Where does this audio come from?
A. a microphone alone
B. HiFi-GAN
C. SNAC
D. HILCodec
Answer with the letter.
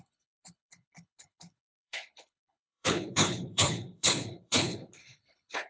D